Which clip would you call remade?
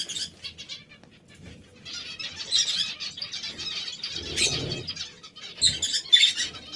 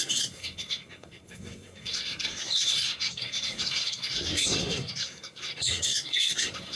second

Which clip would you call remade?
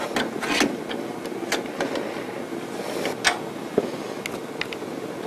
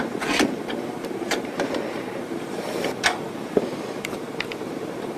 second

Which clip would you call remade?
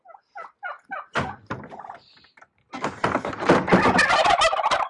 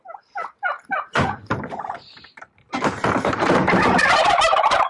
second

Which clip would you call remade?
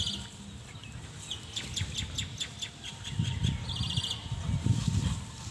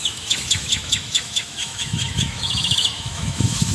second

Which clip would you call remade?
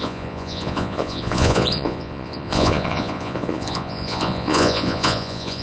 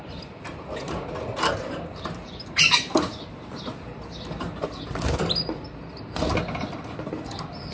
first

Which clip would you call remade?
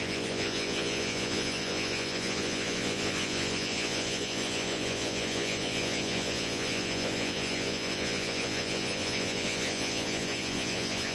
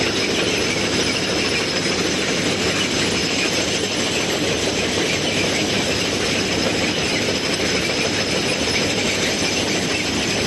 first